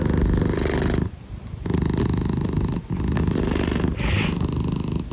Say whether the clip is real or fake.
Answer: real